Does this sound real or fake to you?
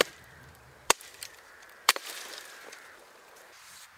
fake